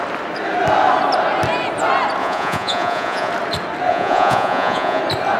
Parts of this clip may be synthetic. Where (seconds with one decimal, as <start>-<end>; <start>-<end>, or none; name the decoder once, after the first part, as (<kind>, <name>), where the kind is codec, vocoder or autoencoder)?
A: 2.2-3.3 (vocoder, Vocos); 3.9-5.0